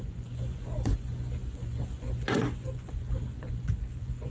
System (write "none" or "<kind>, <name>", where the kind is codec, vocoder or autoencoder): vocoder, Vocos